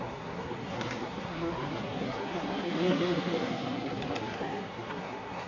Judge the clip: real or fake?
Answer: fake